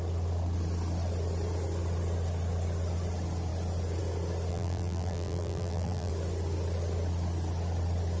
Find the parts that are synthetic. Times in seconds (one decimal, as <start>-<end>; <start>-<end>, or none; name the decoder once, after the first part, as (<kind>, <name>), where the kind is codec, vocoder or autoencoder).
4.5-6.1 (vocoder, BigVGAN v2)